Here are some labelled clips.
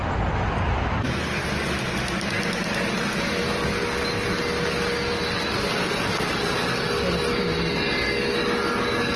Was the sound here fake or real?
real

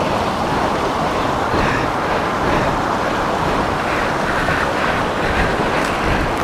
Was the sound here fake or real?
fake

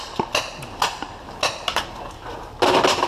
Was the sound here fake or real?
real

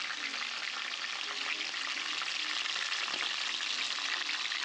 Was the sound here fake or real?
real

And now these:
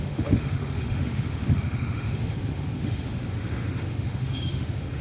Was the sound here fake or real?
fake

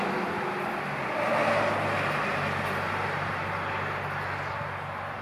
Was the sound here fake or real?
real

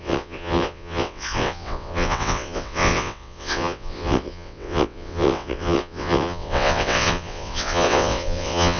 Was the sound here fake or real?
fake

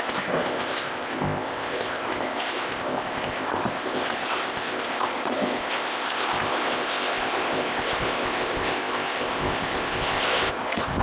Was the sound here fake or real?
fake